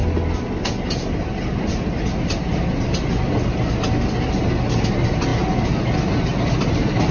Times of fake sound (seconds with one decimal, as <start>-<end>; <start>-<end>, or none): none

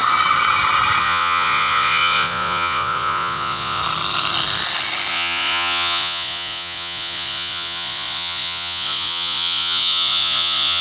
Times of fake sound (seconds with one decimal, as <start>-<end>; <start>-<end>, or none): 1.0-3.8; 5.1-10.8

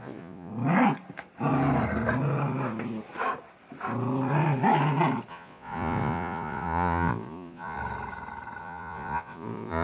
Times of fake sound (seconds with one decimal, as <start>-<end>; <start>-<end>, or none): 0.0-0.5; 5.3-7.8; 8.6-9.8

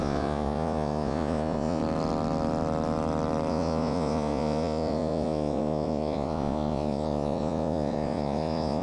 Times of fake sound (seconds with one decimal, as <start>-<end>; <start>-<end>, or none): 0.0-1.8; 3.5-8.8